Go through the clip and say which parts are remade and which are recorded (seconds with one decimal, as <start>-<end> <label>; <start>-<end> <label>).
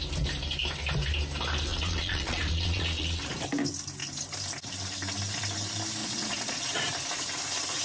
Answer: 0.0-1.7 recorded; 1.7-3.2 remade; 3.2-6.0 recorded; 6.0-6.8 remade; 6.8-7.8 recorded